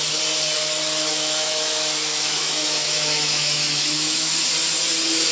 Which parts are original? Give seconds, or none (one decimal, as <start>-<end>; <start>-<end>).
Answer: 0.0-1.1; 4.3-5.3